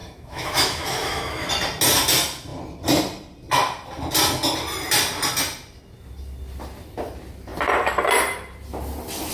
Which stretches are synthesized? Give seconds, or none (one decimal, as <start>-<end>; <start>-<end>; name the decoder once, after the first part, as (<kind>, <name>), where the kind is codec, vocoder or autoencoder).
0.0-1.5 (autoencoder, DAC-VAE)